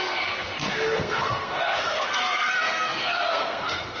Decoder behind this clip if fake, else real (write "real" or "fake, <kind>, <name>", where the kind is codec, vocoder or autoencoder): fake, codec, SNAC